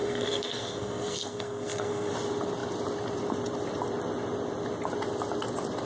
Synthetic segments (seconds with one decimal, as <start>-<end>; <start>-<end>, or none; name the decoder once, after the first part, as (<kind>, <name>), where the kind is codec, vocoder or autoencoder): 0.0-2.1 (codec, SNAC)